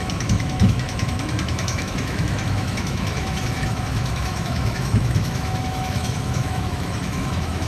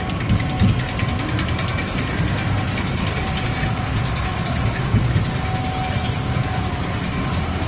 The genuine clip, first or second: second